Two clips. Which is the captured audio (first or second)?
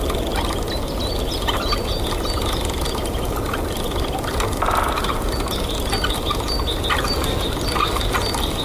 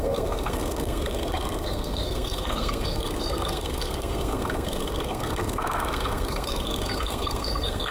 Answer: first